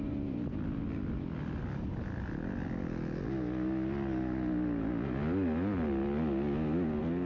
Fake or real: real